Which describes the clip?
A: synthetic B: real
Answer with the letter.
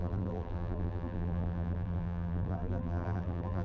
A